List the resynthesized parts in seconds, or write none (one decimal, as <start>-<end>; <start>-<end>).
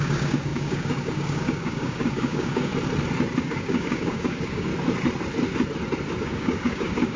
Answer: 0.0-2.7; 3.4-4.7; 6.2-7.2